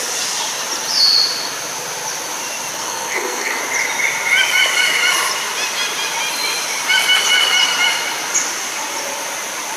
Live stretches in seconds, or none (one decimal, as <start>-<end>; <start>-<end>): 0.0-2.7; 3.6-9.8